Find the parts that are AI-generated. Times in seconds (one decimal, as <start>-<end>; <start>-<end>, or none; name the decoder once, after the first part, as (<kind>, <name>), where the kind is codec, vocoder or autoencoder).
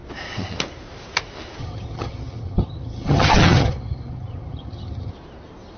1.6-5.1 (vocoder, HiFi-GAN)